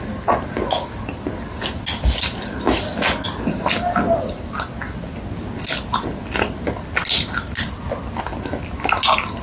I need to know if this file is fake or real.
real